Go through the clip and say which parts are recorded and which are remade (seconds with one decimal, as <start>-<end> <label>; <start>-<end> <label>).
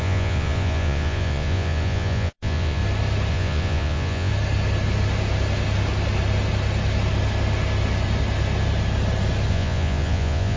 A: 0.0-2.8 remade; 2.8-3.3 recorded; 3.3-4.3 remade; 4.3-9.5 recorded; 9.5-10.6 remade